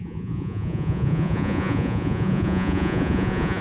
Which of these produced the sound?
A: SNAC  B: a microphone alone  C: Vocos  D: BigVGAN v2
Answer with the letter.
C